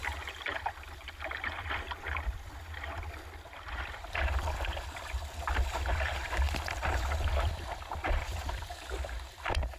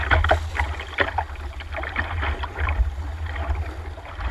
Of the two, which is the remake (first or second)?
first